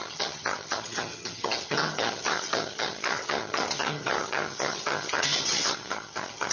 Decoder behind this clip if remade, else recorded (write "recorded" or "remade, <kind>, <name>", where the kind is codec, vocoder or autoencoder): remade, vocoder, HiFi-GAN